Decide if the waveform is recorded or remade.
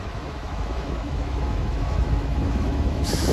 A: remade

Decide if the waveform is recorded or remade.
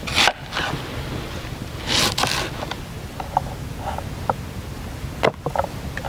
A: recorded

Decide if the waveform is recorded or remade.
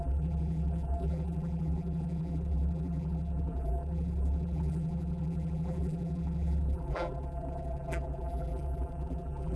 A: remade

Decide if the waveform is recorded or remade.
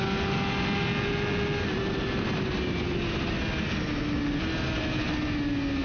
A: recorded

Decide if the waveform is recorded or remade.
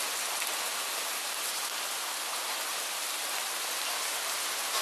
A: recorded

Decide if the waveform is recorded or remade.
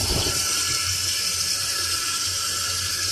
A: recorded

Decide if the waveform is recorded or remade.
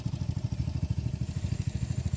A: remade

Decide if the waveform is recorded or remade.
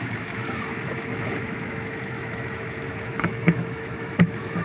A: remade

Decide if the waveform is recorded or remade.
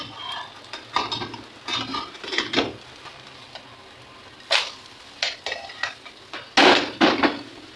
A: recorded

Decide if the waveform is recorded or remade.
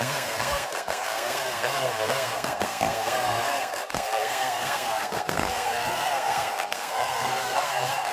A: remade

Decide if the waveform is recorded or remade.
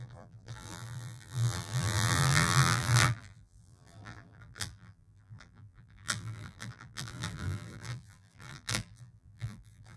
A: remade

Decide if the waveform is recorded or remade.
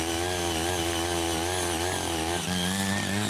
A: recorded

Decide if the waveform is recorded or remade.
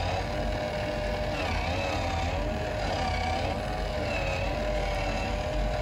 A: recorded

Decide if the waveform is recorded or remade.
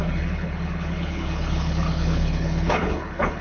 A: remade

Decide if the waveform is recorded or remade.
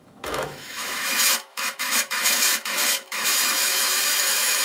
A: remade